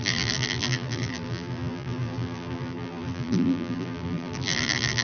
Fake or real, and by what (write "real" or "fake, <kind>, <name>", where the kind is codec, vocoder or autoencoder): fake, vocoder, BigVGAN v2